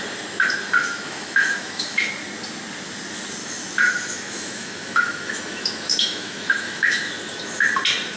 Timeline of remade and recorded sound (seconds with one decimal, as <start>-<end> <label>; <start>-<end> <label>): 0.0-0.8 recorded; 0.8-2.0 remade; 2.0-3.4 recorded; 3.4-7.1 remade; 7.1-8.2 recorded